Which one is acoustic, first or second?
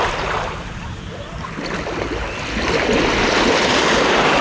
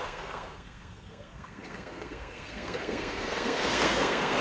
first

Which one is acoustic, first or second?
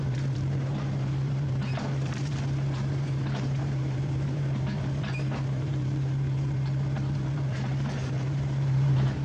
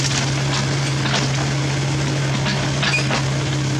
second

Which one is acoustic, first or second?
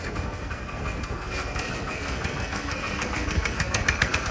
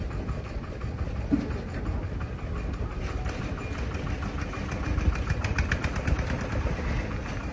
second